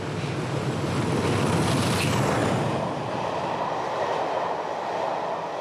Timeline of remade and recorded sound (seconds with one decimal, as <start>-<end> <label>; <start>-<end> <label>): 0.0-5.6 recorded